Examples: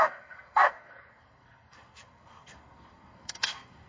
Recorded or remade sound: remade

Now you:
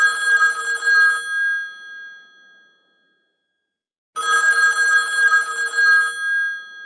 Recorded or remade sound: recorded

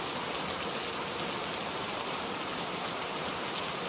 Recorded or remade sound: recorded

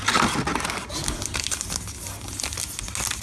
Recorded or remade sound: recorded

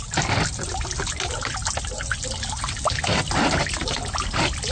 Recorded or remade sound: recorded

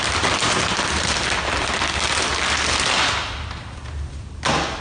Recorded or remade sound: recorded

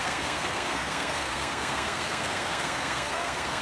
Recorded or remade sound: remade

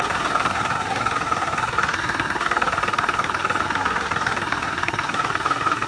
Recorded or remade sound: remade